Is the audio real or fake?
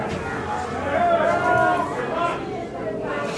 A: real